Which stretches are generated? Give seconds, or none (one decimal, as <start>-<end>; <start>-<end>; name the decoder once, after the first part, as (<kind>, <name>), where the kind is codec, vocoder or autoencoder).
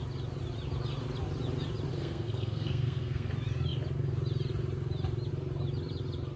1.9-3.3 (codec, SNAC)